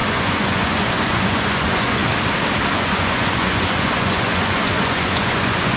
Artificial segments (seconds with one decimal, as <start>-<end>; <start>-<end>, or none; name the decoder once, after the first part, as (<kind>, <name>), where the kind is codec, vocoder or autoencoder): 0.0-2.0 (vocoder, Vocos); 2.7-5.8

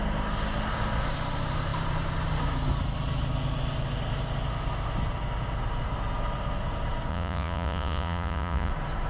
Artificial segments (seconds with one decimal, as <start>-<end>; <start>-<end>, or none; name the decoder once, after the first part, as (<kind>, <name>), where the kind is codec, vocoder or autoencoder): 7.1-8.7 (vocoder, Vocos)

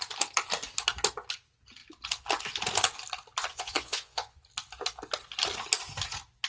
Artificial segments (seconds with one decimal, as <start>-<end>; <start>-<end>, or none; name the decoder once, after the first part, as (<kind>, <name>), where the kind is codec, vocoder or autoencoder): 3.5-4.4 (vocoder, Vocos)

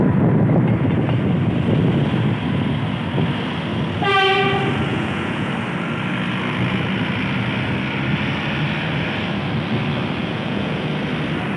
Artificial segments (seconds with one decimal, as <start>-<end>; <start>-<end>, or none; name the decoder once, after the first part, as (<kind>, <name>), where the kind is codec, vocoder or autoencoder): 4.9-5.5 (vocoder, Vocos); 10.2-10.9

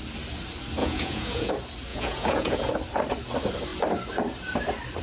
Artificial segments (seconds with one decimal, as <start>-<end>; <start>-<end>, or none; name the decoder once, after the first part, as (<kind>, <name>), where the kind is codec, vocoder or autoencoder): 0.8-1.5 (vocoder, Vocos); 1.9-2.7

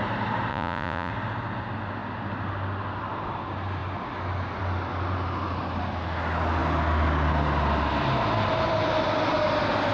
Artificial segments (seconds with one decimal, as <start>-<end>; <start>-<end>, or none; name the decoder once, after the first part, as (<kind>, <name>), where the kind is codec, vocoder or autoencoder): 0.5-1.1 (vocoder, Vocos)